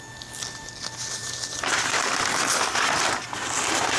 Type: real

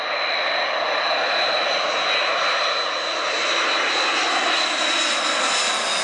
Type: real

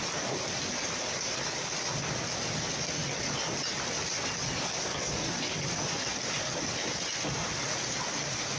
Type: real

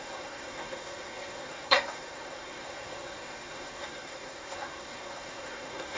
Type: fake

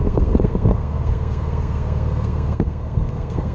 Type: fake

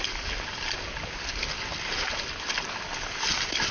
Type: real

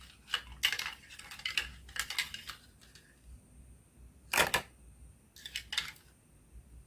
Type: real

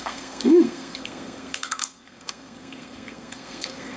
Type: fake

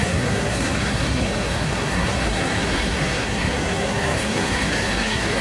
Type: fake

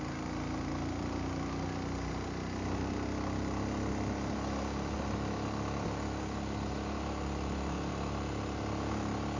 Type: real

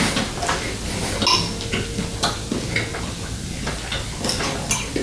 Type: real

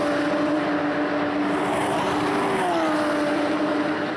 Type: real